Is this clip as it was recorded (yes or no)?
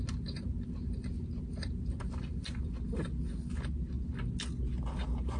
yes